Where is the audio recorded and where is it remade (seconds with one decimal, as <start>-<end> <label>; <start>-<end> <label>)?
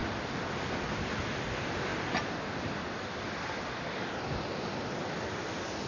0.0-5.9 recorded